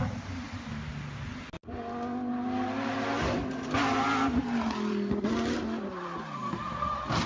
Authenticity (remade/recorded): recorded